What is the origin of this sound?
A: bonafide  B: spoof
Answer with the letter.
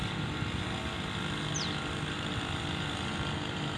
A